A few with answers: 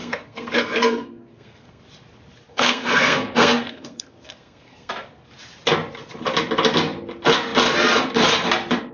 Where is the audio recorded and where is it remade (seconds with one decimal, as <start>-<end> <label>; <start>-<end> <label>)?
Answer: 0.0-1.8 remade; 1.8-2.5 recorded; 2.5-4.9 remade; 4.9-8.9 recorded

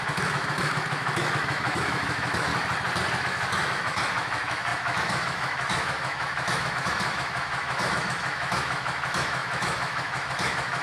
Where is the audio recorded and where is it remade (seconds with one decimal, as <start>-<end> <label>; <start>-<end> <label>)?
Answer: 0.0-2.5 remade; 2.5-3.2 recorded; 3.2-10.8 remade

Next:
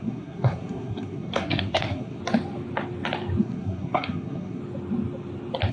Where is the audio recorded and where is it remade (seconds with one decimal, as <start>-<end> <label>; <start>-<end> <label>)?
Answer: 0.0-2.2 remade; 2.2-3.4 recorded; 3.4-4.6 remade; 4.6-5.7 recorded